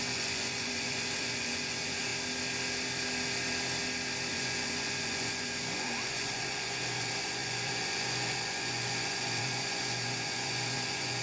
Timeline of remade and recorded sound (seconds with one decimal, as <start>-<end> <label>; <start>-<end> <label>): 0.0-2.1 remade; 2.1-4.3 recorded; 4.3-11.2 remade